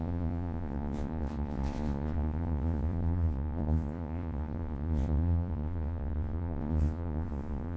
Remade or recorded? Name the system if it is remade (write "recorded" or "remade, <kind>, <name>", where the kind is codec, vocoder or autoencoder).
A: remade, vocoder, Vocos